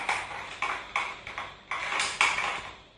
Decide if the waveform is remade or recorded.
recorded